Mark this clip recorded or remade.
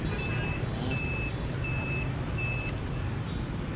recorded